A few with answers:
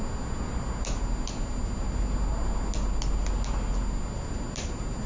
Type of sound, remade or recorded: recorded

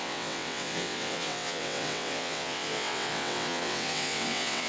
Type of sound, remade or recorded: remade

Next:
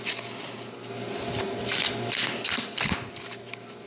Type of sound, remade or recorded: recorded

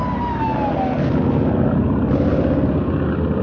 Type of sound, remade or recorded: recorded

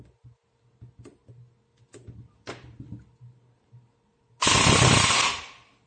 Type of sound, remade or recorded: recorded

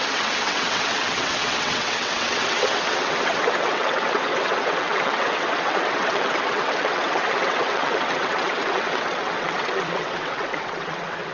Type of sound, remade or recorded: remade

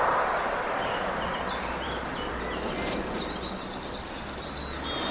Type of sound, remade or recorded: recorded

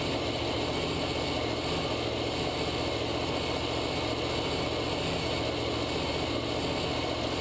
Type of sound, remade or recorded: recorded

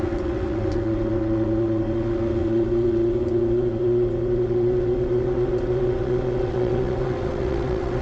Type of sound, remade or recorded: remade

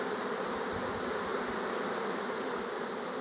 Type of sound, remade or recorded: recorded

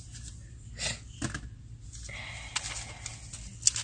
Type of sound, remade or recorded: recorded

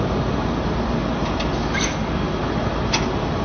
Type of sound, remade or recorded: recorded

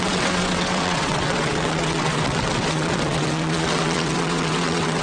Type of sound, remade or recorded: remade